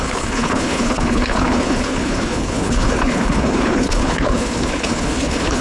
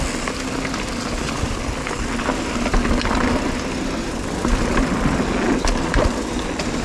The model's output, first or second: first